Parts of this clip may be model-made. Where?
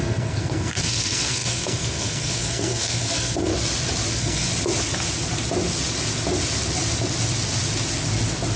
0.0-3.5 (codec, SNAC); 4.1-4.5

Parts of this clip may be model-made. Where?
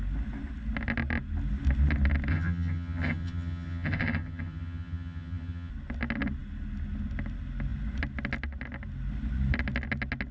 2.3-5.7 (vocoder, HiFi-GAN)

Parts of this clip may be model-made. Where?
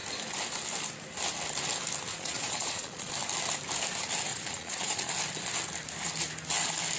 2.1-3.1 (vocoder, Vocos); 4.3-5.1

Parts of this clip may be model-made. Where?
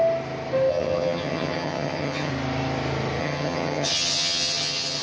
0.7-2.3 (vocoder, HiFi-GAN); 3.2-5.0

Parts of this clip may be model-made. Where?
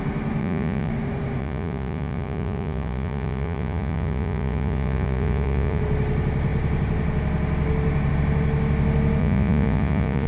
0.4-0.9 (vocoder, Vocos); 1.4-5.8; 9.2-10.3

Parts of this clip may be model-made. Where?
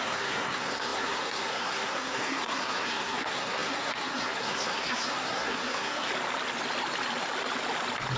0.0-6.1 (codec, SNAC)